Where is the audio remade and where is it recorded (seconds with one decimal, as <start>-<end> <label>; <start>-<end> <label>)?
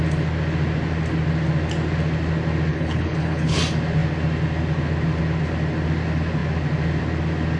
0.0-2.7 recorded; 2.7-3.6 remade; 3.6-7.6 recorded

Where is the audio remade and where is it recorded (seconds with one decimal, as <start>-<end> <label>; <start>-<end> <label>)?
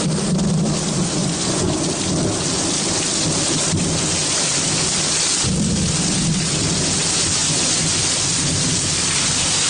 0.0-1.2 recorded; 1.2-1.7 remade; 1.7-7.4 recorded; 7.4-8.0 remade; 8.0-9.7 recorded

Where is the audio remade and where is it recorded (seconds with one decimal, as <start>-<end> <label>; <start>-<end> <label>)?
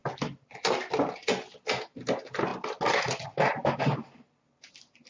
0.0-5.1 recorded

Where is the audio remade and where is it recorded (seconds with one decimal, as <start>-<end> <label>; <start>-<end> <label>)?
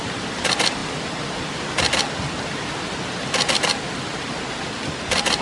0.0-5.4 recorded